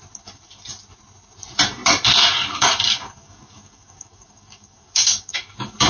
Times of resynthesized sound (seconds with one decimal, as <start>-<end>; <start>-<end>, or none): 2.2-5.9